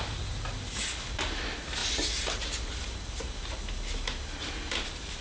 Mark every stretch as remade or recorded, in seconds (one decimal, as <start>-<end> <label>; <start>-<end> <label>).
0.0-5.2 recorded